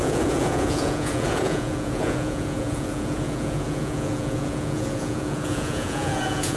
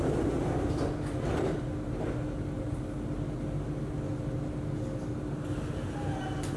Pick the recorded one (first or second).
second